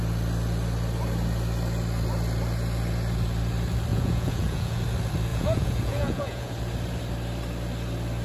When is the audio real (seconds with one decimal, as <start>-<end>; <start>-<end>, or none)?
0.0-3.9; 4.8-5.3; 6.5-8.2